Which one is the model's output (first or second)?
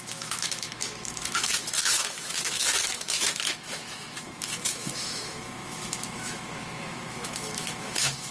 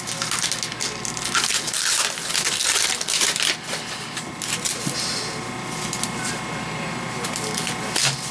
first